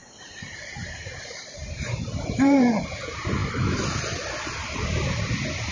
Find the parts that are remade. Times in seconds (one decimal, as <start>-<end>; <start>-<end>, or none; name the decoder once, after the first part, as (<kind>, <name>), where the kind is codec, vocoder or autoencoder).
0.0-1.2 (vocoder, BigVGAN v2); 1.6-2.8